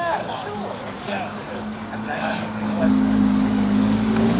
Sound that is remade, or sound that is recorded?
remade